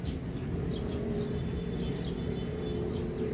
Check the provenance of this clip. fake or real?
real